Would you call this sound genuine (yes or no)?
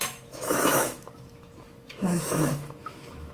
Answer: no